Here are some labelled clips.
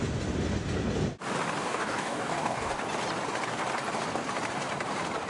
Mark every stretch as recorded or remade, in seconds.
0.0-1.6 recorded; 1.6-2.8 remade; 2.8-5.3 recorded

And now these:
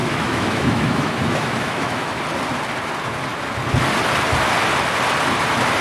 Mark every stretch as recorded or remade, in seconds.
0.0-2.2 remade; 2.2-5.8 recorded